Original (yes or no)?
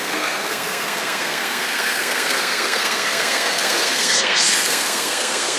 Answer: no